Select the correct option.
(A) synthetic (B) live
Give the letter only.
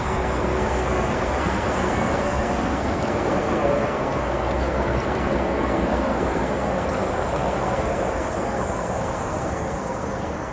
A